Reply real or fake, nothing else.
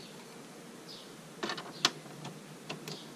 real